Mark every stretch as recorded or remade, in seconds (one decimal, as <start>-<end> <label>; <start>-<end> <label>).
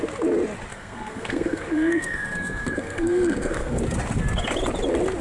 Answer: 0.0-0.7 recorded; 0.7-3.8 remade; 3.8-5.2 recorded